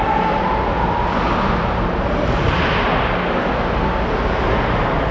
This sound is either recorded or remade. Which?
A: recorded